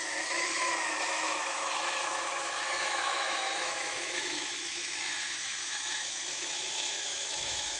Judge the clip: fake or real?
fake